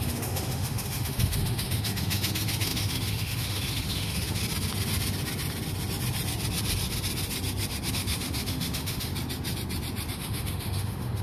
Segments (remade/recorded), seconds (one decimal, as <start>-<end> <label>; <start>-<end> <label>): 0.0-4.4 remade; 4.4-7.9 recorded; 7.9-9.1 remade; 9.1-10.1 recorded; 10.1-11.2 remade